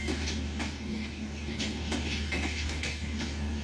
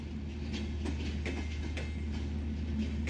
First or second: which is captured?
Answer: second